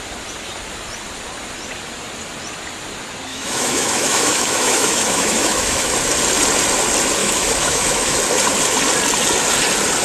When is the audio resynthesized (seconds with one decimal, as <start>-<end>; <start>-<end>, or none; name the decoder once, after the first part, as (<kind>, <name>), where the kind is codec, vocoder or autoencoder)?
3.3-5.9 (autoencoder, DAC-VAE); 7.2-8.2